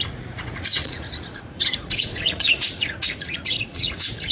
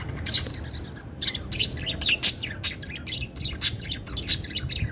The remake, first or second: first